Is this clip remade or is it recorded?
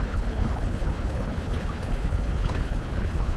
remade